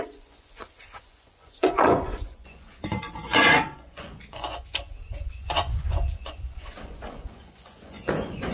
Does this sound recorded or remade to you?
remade